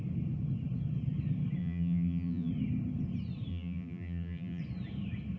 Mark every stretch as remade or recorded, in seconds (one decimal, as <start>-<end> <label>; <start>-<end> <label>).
0.0-1.6 recorded; 1.6-2.5 remade; 2.5-3.5 recorded; 3.5-4.6 remade; 4.6-5.4 recorded